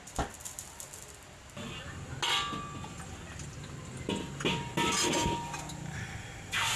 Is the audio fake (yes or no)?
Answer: no